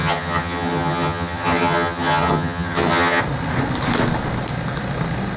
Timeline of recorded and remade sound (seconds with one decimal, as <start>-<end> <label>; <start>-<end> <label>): 0.0-3.2 remade; 3.2-5.4 recorded